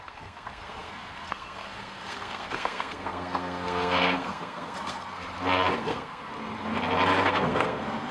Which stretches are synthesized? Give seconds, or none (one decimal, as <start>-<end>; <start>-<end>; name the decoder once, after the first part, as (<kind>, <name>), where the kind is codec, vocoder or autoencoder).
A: 0.0-5.2 (codec, SNAC); 5.8-6.3; 7.2-8.1